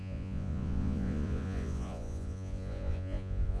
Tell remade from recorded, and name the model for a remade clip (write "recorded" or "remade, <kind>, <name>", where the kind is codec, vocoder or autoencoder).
remade, vocoder, Vocos